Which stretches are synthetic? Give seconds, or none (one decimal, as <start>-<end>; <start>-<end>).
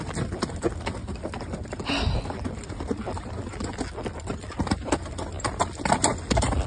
none